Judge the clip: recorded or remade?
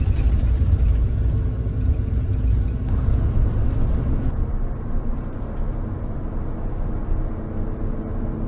recorded